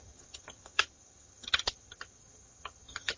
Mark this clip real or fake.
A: fake